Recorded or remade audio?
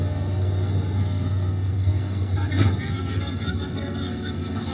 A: remade